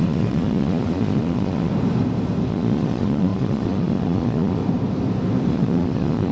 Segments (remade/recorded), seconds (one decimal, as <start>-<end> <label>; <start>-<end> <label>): 0.0-1.7 remade; 1.7-2.5 recorded; 2.5-4.6 remade; 4.6-5.5 recorded; 5.5-6.3 remade